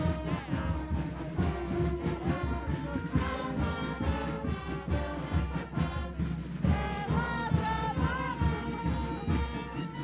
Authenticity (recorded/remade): recorded